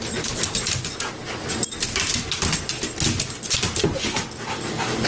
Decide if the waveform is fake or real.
real